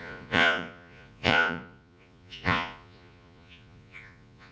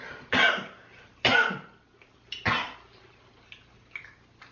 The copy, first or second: first